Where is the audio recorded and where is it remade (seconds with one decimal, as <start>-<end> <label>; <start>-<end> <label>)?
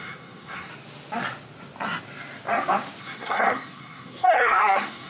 0.0-0.7 remade; 0.7-3.0 recorded; 3.0-5.1 remade